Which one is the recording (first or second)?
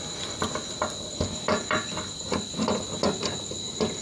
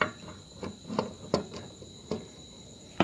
first